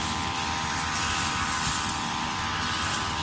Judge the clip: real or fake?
real